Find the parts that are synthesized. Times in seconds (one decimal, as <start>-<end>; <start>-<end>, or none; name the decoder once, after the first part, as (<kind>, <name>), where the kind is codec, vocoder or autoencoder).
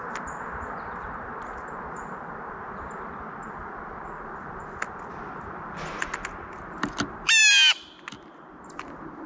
none